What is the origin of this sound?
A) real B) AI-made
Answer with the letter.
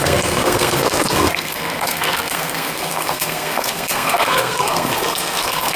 B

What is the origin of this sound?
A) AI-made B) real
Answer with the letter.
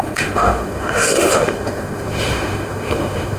A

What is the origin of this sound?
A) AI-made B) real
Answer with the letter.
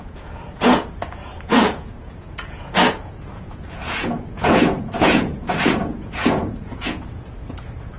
A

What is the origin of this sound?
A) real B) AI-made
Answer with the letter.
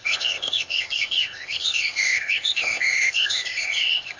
B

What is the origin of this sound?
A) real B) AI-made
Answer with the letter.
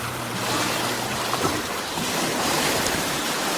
B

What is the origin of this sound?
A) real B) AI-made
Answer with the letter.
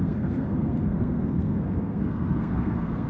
B